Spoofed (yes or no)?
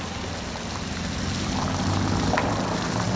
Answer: no